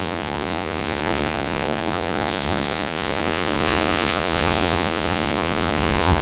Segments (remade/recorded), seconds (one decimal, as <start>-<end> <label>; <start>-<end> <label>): 0.0-6.2 remade